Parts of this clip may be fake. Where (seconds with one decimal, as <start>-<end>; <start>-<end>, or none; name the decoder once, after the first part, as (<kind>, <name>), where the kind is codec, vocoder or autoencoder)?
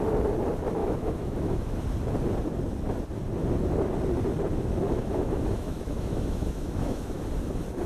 0.8-1.8 (autoencoder, DAC-VAE); 4.9-7.2